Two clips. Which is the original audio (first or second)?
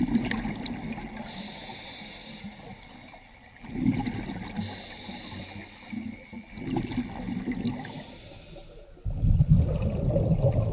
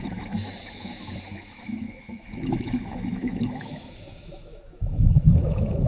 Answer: first